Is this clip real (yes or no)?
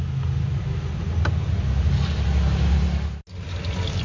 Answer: yes